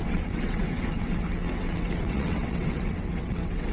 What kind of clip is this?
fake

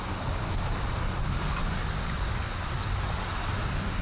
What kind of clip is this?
real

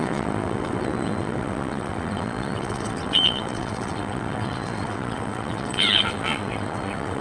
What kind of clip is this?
fake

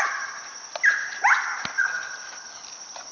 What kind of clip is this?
real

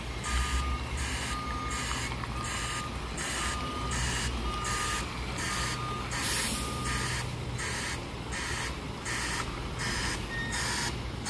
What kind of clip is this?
real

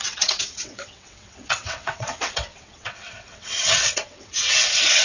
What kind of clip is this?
fake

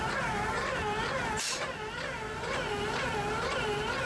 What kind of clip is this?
real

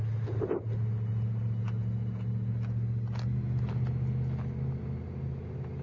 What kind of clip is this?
real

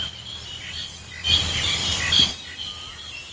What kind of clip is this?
real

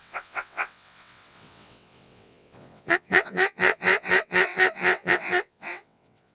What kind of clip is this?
fake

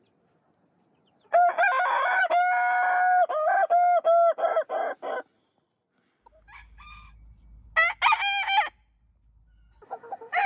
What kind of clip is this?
real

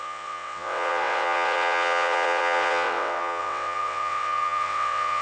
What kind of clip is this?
fake